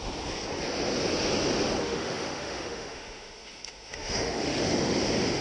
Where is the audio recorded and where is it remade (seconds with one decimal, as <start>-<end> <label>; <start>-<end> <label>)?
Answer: 0.0-1.8 recorded; 1.8-5.0 remade; 5.0-5.4 recorded